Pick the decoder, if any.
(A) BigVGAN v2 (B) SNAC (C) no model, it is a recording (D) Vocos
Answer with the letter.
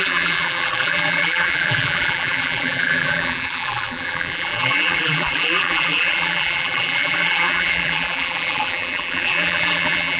A